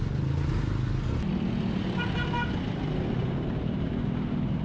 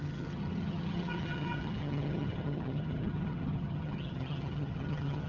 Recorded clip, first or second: first